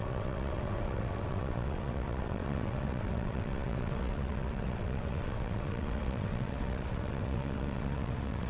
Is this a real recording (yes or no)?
no